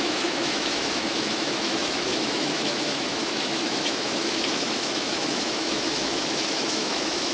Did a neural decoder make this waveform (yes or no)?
yes